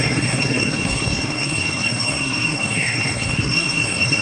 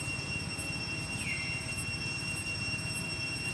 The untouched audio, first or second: second